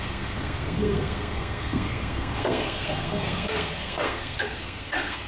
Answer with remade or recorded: remade